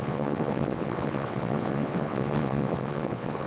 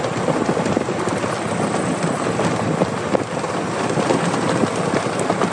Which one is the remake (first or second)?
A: first